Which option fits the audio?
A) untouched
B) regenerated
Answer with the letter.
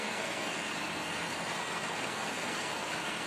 B